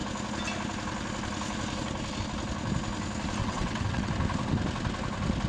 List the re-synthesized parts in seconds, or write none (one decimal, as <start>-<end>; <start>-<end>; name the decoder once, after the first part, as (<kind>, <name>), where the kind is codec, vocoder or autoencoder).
3.4-4.1 (vocoder, WaveNeXt)